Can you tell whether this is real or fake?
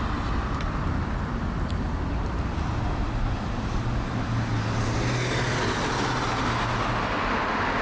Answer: real